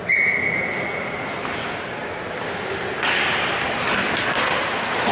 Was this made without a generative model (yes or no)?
yes